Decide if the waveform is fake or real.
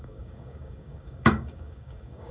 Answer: fake